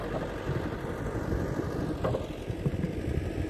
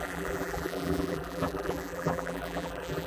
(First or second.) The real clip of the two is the first